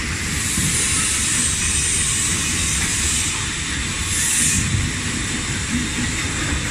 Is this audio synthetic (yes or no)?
yes